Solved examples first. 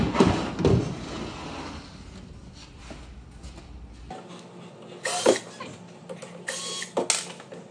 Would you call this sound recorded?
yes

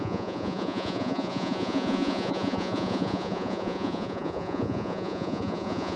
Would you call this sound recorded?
no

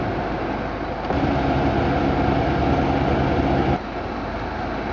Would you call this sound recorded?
yes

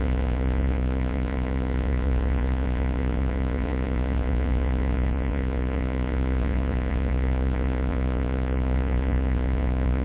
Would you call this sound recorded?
no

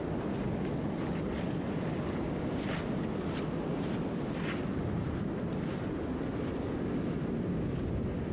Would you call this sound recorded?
yes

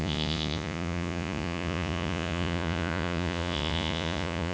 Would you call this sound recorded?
no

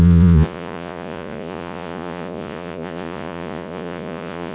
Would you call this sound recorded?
no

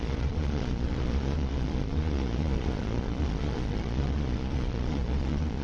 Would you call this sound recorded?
no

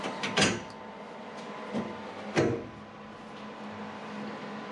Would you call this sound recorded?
yes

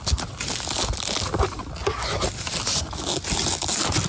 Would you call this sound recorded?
yes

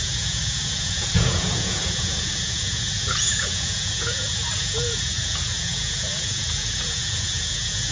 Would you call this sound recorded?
no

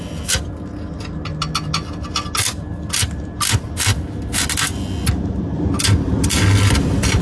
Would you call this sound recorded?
yes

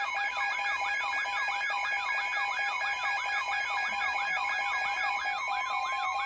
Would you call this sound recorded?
yes